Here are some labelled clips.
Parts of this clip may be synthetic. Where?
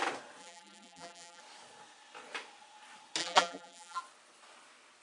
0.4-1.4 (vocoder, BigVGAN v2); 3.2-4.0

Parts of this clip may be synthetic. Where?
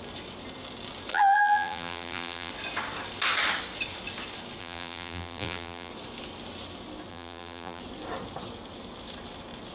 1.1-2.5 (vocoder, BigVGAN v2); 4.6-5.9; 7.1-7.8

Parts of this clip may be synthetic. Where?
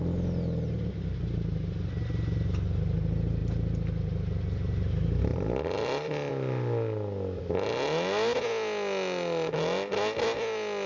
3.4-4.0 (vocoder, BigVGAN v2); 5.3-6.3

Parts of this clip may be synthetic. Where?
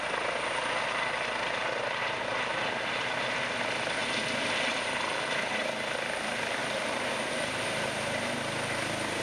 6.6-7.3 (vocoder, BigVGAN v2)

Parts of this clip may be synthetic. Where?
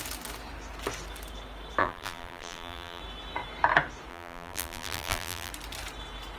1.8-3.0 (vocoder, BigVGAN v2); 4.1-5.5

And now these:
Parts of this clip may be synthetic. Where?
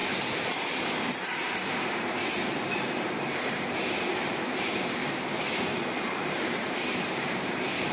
0.5-5.0 (vocoder, BigVGAN v2); 5.9-7.9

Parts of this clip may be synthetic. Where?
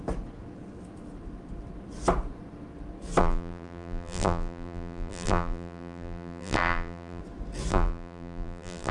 3.2-7.2 (vocoder, BigVGAN v2); 7.7-8.9